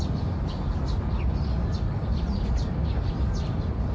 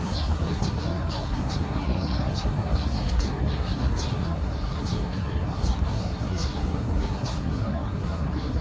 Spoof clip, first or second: second